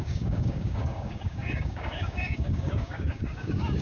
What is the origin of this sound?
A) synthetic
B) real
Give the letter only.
A